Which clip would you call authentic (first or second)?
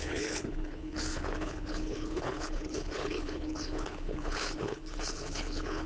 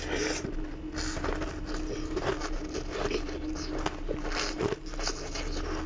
second